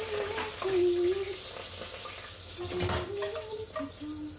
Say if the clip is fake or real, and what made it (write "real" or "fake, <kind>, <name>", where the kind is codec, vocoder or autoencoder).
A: real